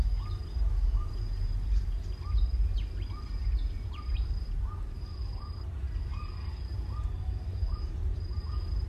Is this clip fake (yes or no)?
yes